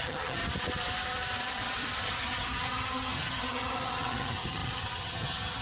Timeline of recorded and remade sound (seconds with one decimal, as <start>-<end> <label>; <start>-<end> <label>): 0.0-0.4 remade; 0.4-2.0 recorded; 2.0-5.6 remade